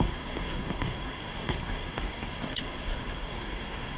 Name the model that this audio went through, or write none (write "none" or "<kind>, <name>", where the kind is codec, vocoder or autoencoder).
codec, SNAC